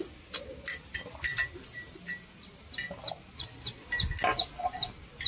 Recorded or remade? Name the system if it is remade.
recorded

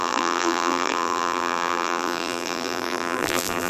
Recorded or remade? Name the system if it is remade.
remade, vocoder, BigVGAN v2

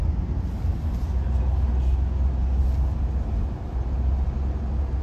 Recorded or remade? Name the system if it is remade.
recorded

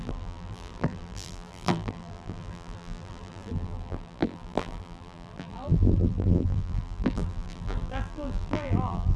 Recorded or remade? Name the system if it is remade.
remade, vocoder, BigVGAN v2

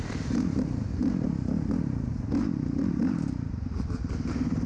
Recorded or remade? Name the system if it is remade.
remade, vocoder, BigVGAN v2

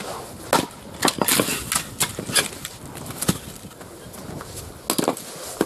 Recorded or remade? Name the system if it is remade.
recorded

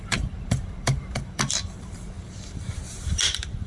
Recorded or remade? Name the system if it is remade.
remade, vocoder, BigVGAN v2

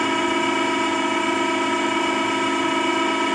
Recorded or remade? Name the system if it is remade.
recorded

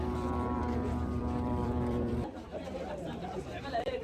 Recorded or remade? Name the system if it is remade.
remade, vocoder, BigVGAN v2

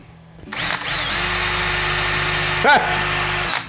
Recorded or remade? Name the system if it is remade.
recorded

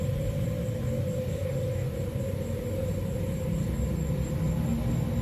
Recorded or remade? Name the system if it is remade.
recorded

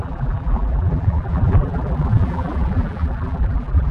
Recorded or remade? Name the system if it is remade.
remade, vocoder, BigVGAN v2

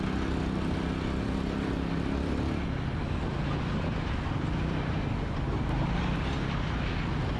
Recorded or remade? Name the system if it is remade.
recorded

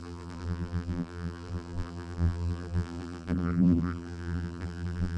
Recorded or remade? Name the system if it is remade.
remade, vocoder, BigVGAN v2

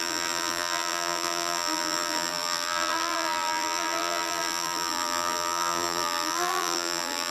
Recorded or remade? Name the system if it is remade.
remade, vocoder, BigVGAN v2